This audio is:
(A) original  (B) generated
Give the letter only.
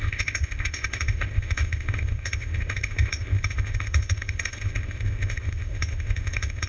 B